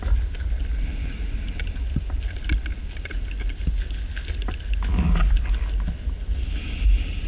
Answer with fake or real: real